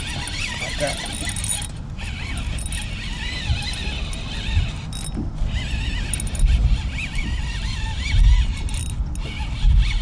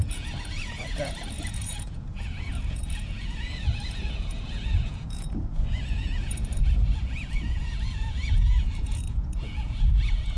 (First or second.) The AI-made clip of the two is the second